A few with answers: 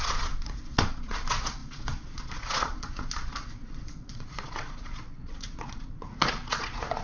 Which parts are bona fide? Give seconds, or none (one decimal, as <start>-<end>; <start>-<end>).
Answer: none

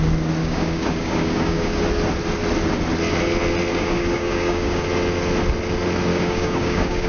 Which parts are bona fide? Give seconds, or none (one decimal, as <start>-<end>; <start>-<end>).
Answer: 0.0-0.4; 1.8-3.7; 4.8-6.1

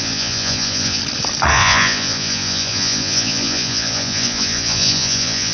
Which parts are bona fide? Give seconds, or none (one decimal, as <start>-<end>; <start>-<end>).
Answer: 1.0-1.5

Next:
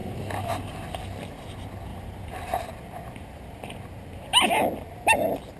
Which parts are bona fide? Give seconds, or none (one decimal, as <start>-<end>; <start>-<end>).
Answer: 1.0-1.9; 4.5-5.6

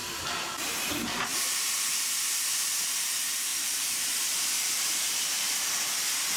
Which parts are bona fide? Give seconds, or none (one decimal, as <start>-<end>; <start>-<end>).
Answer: 0.9-1.3; 2.0-3.5; 5.7-6.4

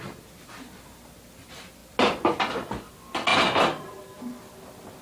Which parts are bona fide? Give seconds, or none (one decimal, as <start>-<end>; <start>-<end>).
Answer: 0.0-5.0

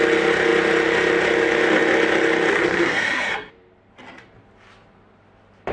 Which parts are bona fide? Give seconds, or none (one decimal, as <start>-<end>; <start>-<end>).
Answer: 0.0-2.5; 3.5-5.7